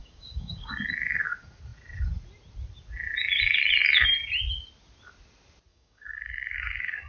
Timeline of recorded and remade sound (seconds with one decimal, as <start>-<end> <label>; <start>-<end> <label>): 0.0-0.7 remade; 0.7-5.7 recorded; 5.7-7.1 remade